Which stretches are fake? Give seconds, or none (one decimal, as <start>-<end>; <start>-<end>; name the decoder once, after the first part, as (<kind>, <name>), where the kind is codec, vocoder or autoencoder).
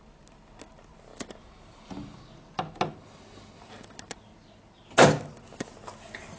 none